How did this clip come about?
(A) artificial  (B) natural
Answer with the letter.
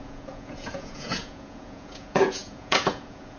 A